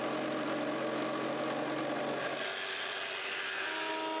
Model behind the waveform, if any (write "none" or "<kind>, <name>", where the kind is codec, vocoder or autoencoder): none